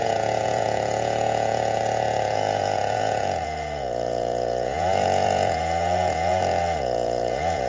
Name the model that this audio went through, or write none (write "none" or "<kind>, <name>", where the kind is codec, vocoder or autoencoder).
vocoder, Vocos